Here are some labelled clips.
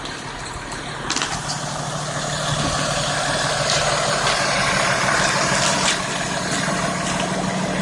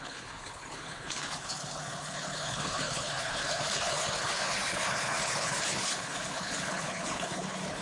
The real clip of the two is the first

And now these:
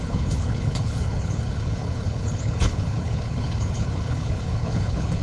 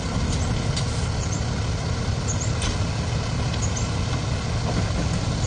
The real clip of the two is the second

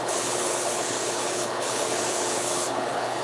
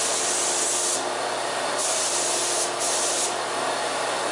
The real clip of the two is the second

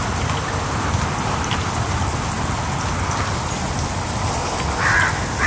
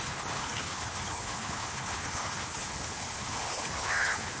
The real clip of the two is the first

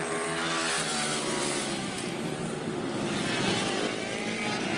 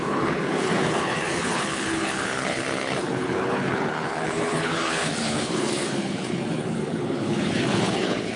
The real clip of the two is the first